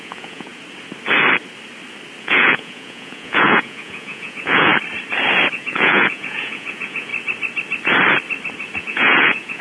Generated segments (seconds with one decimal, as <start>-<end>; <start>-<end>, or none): 0.0-0.5; 2.2-4.7; 5.5-7.1; 8.8-9.6